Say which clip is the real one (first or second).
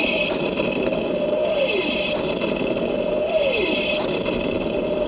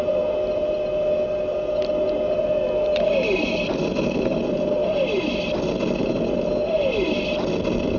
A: second